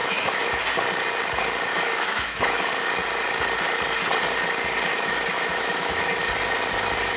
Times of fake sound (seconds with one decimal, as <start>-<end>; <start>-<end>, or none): 0.0-0.6; 1.7-2.7; 4.9-6.2